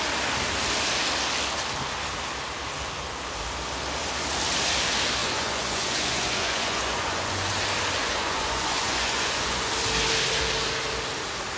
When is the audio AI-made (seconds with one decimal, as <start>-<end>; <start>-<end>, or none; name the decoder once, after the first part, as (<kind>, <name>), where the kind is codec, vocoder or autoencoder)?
5.2-7.5 (vocoder, Vocos); 8.0-9.7